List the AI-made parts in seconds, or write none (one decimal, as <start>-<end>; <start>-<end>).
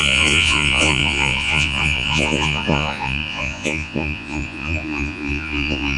0.0-6.0